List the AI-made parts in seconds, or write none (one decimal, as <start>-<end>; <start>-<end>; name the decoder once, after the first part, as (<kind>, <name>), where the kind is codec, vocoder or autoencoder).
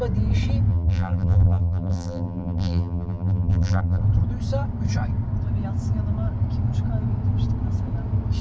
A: 0.7-4.0 (vocoder, BigVGAN v2)